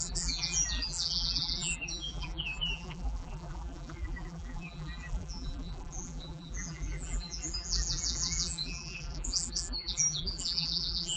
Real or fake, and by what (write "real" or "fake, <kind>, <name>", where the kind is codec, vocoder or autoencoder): fake, vocoder, BigVGAN v2